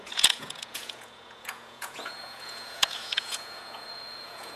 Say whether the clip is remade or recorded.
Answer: remade